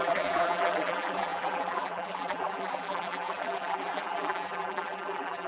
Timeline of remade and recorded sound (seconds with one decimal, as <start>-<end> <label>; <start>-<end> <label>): 0.0-5.5 remade